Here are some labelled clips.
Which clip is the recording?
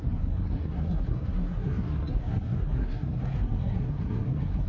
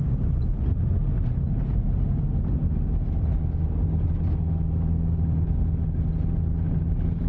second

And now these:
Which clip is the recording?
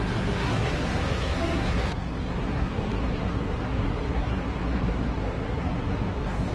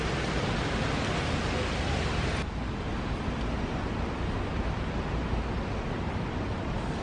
second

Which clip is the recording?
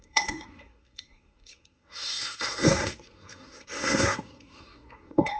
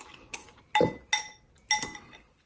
second